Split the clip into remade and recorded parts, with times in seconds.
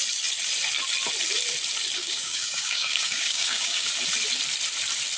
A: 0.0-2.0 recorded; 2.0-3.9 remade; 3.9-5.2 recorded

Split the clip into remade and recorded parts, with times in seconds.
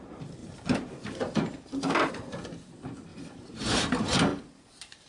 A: 0.0-0.4 recorded; 0.4-2.1 remade; 2.1-3.1 recorded; 3.1-3.8 remade; 3.8-4.3 recorded; 4.3-5.1 remade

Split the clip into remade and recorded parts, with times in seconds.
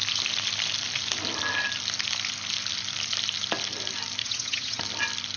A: 0.0-4.2 recorded; 4.2-4.8 remade; 4.8-5.4 recorded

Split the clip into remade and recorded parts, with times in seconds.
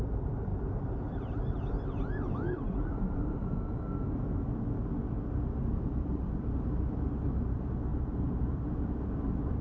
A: 0.0-0.5 remade; 0.5-1.1 recorded; 1.1-3.4 remade; 3.4-5.7 recorded; 5.7-9.6 remade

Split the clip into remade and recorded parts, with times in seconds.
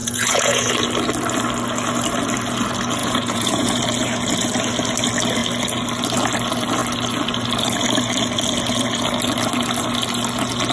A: 0.0-0.7 remade; 0.7-3.0 recorded; 3.0-3.8 remade; 3.8-10.7 recorded